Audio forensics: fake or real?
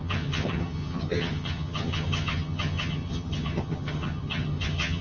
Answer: fake